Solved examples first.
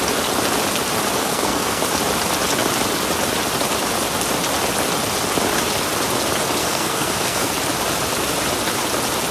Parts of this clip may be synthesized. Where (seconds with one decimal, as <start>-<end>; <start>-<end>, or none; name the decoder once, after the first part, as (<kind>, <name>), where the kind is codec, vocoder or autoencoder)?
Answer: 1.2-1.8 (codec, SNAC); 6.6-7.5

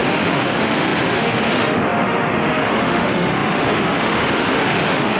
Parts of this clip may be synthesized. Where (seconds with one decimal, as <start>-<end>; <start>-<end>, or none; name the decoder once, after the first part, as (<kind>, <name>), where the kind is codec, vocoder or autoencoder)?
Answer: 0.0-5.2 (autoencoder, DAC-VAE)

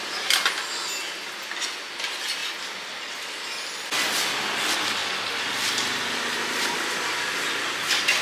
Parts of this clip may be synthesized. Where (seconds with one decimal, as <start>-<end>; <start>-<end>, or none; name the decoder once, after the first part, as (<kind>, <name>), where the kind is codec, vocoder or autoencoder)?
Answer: 5.0-7.1 (vocoder, BigVGAN v2)

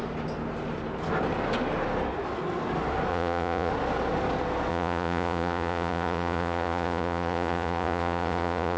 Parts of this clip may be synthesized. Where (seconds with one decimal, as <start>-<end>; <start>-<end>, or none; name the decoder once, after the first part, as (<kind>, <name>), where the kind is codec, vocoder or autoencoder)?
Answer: 3.1-3.7 (vocoder, Vocos); 4.7-8.8